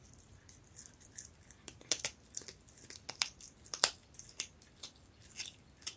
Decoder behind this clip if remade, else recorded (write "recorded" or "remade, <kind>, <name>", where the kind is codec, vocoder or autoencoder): recorded